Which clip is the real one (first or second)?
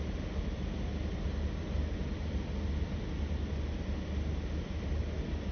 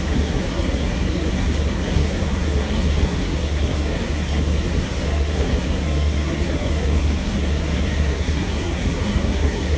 first